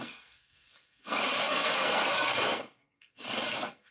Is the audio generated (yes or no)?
yes